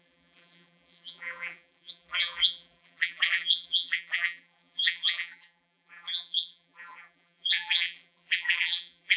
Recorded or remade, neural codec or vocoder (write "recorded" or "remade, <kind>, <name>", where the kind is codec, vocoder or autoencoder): remade, vocoder, BigVGAN v2